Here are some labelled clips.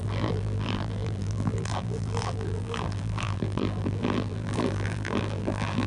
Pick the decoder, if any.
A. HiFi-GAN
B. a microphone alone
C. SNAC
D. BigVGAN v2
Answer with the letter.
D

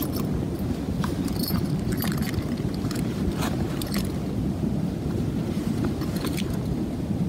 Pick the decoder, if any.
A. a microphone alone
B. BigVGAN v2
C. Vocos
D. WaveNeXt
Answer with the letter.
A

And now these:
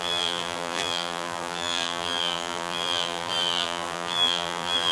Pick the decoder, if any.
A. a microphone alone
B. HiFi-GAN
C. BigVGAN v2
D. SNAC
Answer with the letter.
C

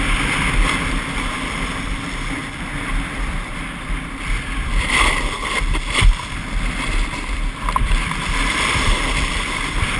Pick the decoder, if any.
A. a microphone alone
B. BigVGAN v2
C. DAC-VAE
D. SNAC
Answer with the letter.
B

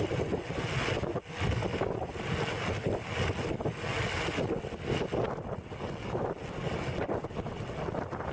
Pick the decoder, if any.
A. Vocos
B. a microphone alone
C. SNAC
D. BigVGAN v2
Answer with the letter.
B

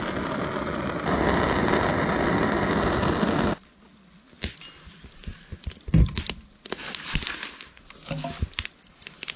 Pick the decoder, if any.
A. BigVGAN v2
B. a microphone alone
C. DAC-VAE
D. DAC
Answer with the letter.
B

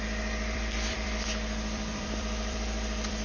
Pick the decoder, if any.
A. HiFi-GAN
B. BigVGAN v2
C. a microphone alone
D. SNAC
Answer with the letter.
B